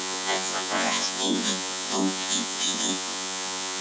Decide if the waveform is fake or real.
fake